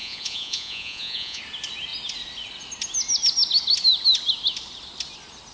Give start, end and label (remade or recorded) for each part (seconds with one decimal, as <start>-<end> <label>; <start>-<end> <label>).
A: 0.0-1.4 remade; 1.4-5.5 recorded